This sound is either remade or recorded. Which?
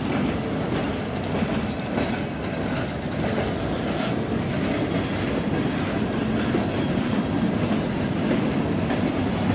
recorded